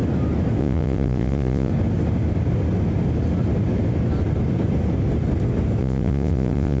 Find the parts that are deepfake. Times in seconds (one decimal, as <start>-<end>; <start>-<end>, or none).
0.6-1.7; 5.8-6.8